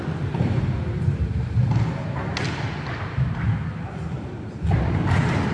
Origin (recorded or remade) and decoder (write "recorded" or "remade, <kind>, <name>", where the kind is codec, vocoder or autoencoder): recorded